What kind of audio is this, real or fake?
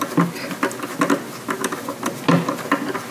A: real